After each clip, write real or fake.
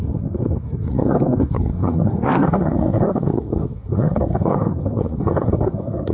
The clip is fake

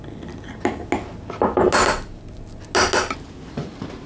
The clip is real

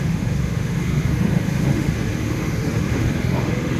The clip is fake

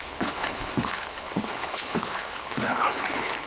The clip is fake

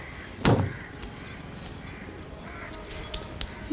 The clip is real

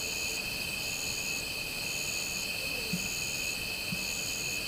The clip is real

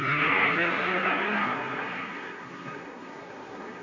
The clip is fake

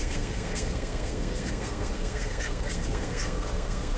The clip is fake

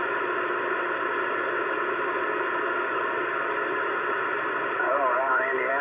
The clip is real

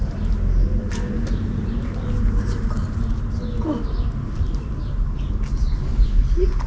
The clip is real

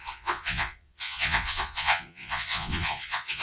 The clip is fake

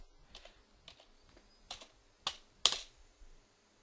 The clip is real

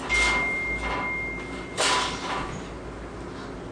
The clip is real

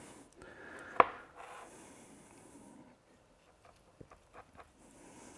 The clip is real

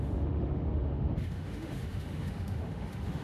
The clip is fake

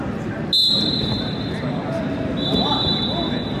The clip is real